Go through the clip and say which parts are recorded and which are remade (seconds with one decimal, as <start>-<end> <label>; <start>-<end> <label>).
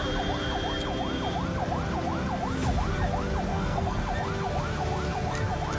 0.0-3.5 recorded; 3.5-4.0 remade; 4.0-5.8 recorded